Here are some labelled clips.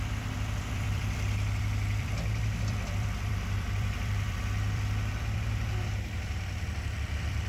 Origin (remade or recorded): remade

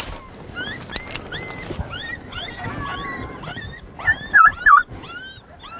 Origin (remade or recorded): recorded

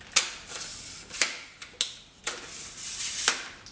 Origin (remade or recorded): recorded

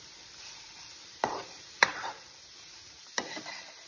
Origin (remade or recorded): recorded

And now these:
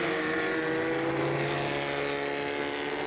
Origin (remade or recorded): recorded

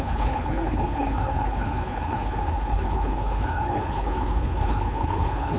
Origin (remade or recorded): remade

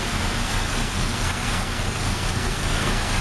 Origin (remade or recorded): remade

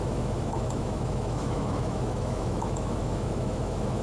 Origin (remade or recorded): remade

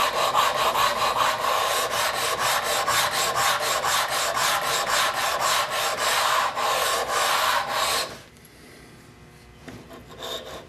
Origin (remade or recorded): recorded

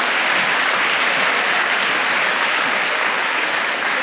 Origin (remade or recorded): recorded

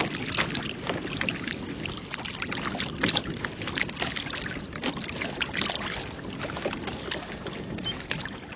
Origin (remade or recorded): recorded